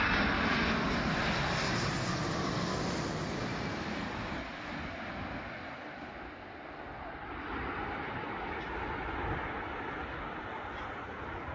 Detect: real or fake real